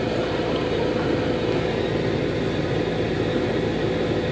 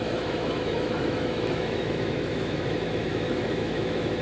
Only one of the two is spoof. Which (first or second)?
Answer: second